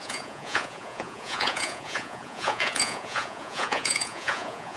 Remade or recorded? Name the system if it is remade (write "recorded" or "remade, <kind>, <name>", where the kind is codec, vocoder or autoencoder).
remade, vocoder, Vocos